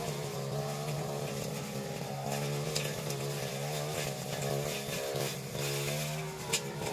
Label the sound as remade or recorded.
recorded